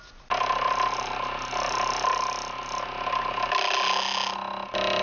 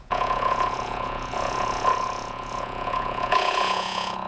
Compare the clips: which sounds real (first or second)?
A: first